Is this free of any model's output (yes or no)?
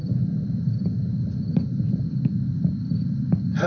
yes